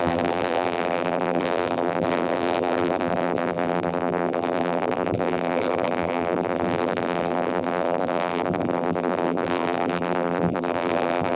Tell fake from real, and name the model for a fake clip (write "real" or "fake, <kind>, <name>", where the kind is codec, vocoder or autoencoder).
fake, vocoder, BigVGAN v2